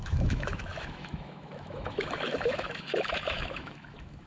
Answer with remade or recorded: remade